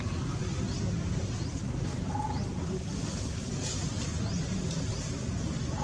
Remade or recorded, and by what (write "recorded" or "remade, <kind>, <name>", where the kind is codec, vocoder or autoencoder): recorded